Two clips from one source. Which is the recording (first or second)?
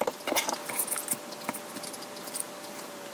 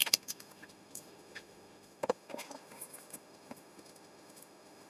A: first